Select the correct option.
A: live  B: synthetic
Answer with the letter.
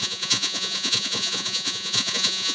B